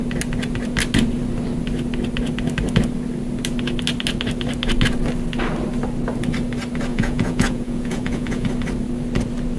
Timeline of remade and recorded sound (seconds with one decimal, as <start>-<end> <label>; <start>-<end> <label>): 0.0-6.9 recorded; 6.9-8.5 remade; 8.5-9.6 recorded